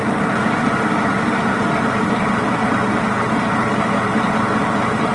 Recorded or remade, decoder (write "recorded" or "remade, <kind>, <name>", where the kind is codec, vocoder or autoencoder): recorded